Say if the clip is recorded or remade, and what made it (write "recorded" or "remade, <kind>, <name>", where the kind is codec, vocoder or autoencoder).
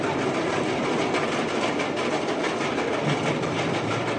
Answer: recorded